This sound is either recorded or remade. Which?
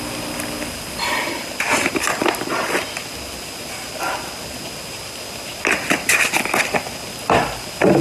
recorded